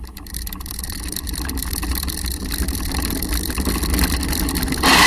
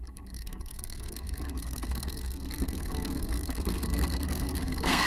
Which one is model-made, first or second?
second